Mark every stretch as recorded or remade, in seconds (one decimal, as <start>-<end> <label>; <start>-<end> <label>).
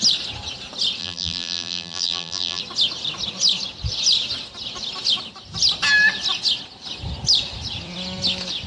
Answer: 0.0-1.0 recorded; 1.0-2.6 remade; 2.6-8.7 recorded